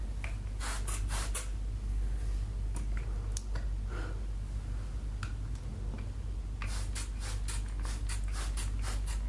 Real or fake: real